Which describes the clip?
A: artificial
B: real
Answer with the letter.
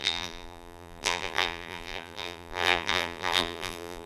A